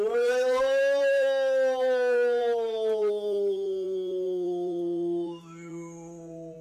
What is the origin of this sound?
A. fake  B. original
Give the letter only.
A